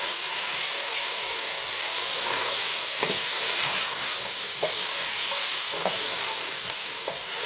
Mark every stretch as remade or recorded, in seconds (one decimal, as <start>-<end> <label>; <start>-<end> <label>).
0.0-7.5 remade